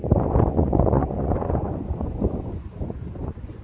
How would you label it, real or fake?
fake